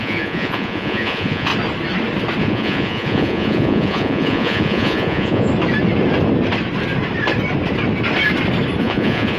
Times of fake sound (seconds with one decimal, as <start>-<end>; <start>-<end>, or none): 0.0-1.5; 2.4-5.5; 8.8-9.4